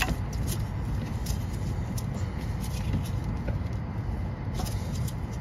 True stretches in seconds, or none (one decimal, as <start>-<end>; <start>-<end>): 0.0-5.4